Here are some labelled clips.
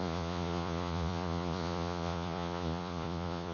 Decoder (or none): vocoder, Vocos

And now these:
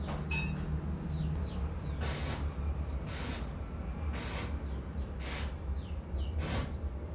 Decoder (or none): none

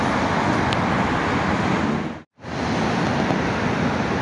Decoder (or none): none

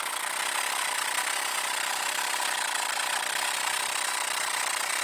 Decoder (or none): none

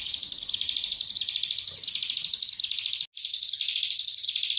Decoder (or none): none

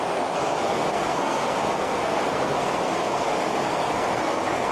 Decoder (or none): codec, SNAC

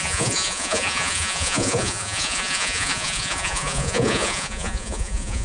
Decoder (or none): vocoder, Vocos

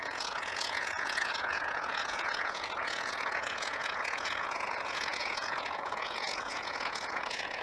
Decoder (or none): vocoder, Vocos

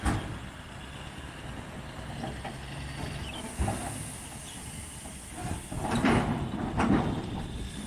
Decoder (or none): none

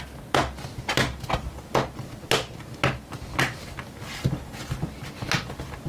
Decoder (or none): none